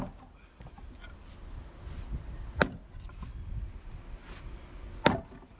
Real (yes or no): yes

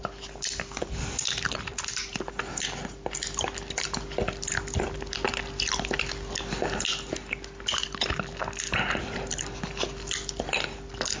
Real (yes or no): yes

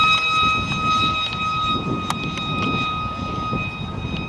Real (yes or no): yes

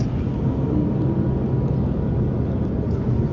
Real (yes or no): yes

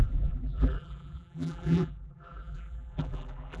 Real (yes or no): no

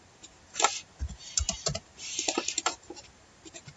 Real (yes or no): no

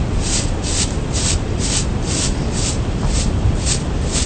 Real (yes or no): yes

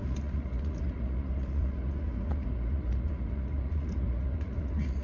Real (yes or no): no